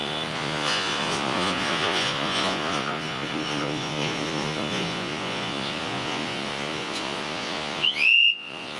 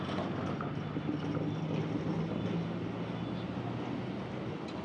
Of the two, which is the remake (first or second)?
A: first